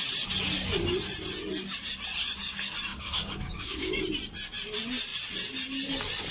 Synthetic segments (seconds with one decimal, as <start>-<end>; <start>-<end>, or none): 2.9-4.0